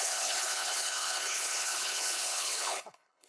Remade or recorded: remade